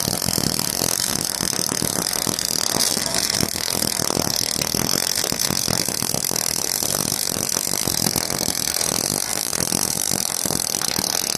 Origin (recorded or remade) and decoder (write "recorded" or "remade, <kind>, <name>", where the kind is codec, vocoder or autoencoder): recorded